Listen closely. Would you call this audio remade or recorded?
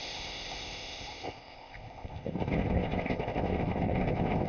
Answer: remade